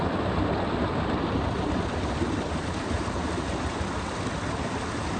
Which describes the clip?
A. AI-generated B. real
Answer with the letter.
B